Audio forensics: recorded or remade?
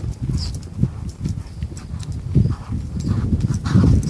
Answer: recorded